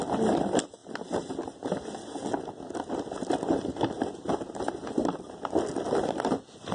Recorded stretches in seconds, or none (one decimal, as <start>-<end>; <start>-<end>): 0.0-6.7